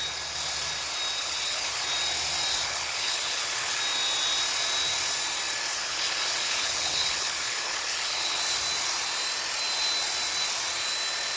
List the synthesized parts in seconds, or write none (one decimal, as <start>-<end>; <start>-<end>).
1.2-1.8; 2.5-3.8; 5.7-8.4